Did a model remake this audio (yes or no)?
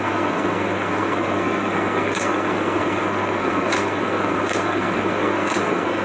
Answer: yes